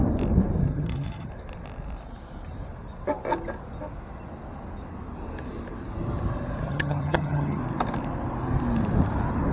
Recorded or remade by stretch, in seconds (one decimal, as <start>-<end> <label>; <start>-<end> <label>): 0.0-0.7 recorded; 0.7-1.3 remade; 1.3-6.7 recorded; 6.7-7.6 remade; 7.6-9.5 recorded